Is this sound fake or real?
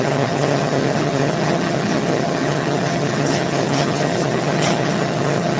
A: fake